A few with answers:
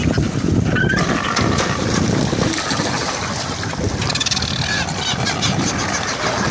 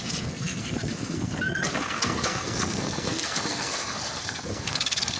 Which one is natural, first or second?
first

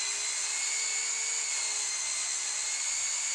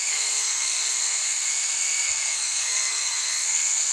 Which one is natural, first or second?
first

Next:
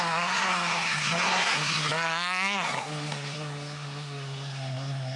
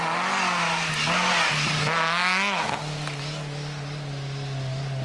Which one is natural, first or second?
second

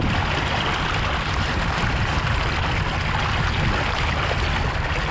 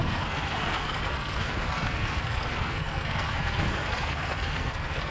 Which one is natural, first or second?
first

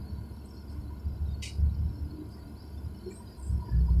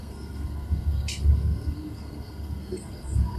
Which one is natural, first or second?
first